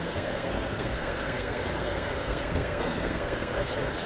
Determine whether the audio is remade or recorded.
remade